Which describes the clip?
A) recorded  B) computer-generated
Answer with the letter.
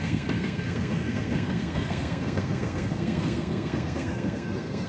B